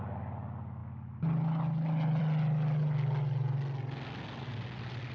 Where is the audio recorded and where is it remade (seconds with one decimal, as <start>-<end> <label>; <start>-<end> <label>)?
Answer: 0.0-5.1 recorded